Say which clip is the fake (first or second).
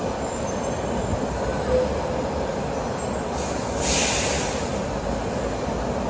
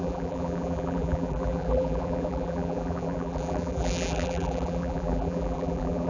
second